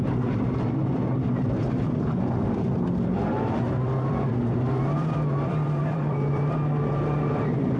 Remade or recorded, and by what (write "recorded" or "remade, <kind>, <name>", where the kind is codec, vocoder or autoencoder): remade, vocoder, BigVGAN v2